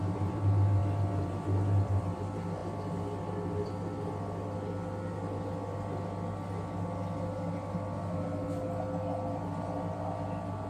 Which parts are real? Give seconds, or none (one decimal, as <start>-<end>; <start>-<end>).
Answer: 0.0-10.7

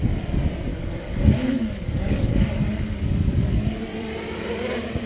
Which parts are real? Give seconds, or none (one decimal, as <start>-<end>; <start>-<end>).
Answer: 0.0-0.7; 3.8-5.1